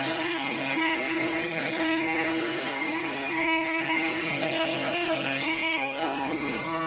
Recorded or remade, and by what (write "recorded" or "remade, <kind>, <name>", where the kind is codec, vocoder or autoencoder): remade, codec, SNAC